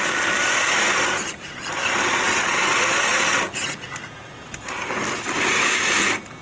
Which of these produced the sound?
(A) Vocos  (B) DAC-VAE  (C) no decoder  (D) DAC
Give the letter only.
C